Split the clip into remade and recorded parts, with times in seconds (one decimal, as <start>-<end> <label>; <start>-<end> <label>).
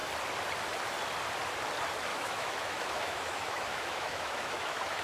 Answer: 0.0-2.1 recorded; 2.1-5.0 remade